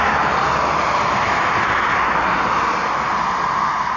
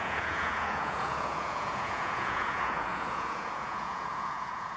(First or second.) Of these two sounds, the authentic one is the first